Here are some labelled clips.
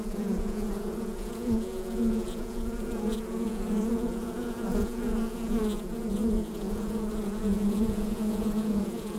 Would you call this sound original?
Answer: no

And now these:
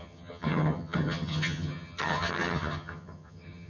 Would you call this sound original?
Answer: no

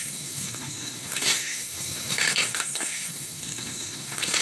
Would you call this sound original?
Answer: no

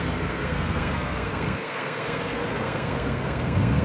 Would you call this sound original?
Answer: no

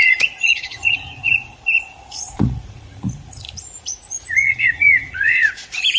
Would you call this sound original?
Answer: no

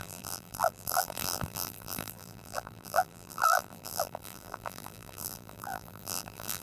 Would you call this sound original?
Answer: no